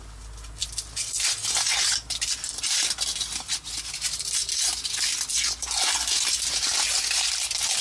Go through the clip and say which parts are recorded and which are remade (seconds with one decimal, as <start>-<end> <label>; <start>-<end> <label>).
0.0-7.8 recorded

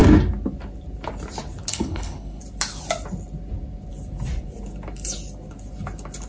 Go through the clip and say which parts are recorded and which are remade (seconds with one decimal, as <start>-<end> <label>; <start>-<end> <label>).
0.0-1.7 recorded; 1.7-2.4 remade; 2.4-6.3 recorded

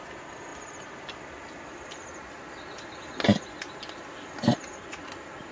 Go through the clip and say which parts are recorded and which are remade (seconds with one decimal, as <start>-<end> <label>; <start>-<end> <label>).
0.0-5.5 recorded

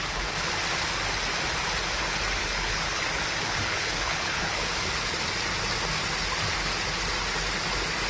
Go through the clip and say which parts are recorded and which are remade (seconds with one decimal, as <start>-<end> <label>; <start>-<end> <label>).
0.0-2.4 recorded; 2.4-3.0 remade; 3.0-3.4 recorded; 3.4-5.1 remade; 5.1-8.1 recorded

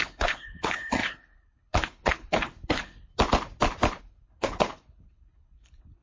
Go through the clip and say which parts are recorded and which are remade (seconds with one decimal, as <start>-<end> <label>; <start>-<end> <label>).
0.0-3.1 remade; 3.1-4.0 recorded; 4.0-6.0 remade

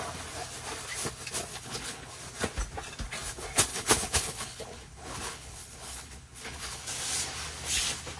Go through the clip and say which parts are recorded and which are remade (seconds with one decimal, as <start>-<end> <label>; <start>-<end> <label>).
0.0-1.5 recorded; 1.5-2.1 remade; 2.1-3.7 recorded; 3.7-6.8 remade; 6.8-8.2 recorded

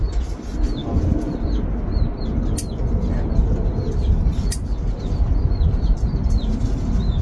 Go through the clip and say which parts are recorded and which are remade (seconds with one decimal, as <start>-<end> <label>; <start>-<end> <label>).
0.0-7.2 recorded

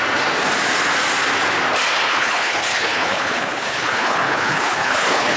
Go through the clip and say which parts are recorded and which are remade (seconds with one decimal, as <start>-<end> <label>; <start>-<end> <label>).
0.0-2.1 recorded; 2.1-5.4 remade